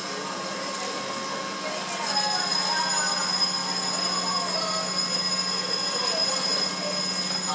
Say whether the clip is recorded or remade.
recorded